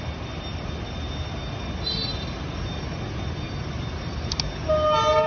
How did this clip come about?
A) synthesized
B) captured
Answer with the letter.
B